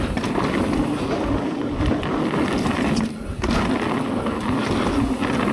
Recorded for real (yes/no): yes